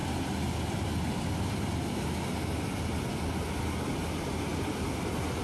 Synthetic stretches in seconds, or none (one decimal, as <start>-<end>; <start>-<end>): none

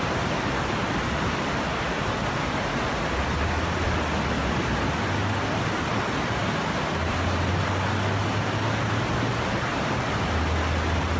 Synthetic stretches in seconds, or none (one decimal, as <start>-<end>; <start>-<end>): none

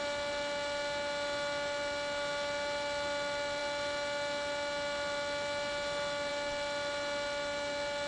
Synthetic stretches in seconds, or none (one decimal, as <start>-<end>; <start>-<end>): none